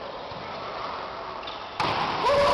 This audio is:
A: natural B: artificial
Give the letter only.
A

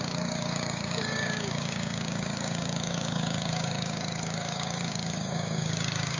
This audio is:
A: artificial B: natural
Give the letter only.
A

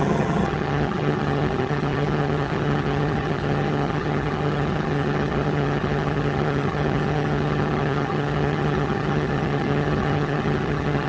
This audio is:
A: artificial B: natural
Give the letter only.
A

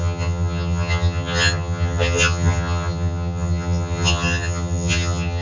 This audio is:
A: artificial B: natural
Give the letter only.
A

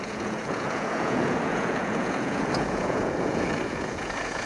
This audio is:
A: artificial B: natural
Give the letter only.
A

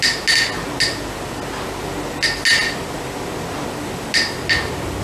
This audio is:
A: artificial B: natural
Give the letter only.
B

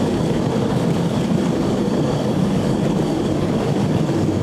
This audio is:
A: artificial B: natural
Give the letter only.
A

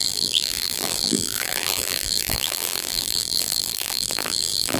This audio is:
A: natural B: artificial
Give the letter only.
B